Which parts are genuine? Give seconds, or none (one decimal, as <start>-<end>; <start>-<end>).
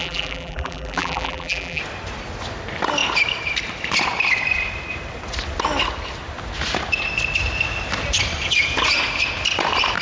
1.8-10.0